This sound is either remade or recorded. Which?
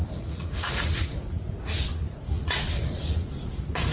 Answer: remade